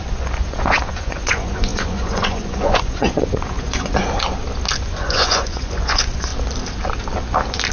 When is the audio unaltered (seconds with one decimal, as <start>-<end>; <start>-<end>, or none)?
4.0-4.8; 6.3-7.7